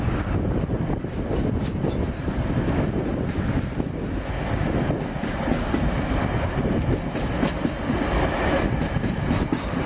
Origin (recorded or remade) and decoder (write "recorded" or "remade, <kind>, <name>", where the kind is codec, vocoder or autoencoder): recorded